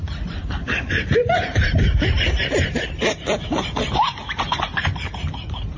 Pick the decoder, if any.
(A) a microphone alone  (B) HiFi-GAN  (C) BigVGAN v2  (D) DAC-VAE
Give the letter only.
C